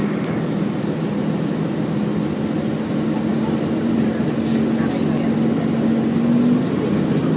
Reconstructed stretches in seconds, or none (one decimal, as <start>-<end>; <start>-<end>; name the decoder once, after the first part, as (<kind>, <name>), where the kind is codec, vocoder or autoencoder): 3.3-4.4 (vocoder, BigVGAN v2)